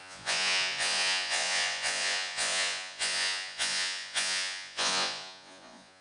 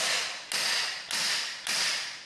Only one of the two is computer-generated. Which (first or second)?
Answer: first